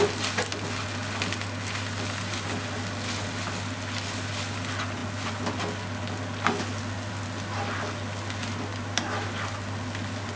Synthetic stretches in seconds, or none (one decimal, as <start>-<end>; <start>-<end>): none